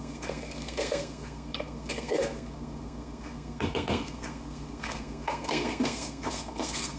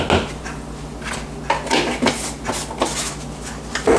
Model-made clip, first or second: first